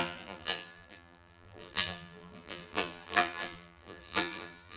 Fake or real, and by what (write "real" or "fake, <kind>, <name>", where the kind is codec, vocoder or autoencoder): fake, vocoder, BigVGAN v2